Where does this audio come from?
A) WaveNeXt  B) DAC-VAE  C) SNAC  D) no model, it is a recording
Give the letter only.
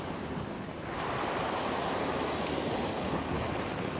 D